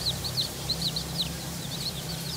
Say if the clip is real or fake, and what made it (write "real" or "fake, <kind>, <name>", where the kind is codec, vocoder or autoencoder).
fake, vocoder, BigVGAN v2